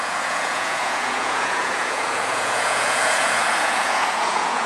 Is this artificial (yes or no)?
yes